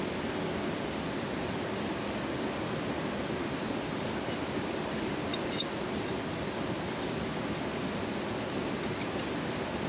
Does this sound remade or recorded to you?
recorded